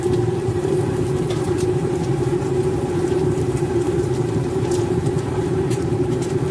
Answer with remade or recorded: remade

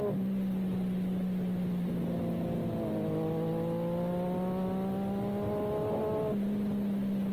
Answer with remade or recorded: recorded